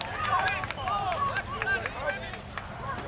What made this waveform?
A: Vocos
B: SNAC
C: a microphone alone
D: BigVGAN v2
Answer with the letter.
D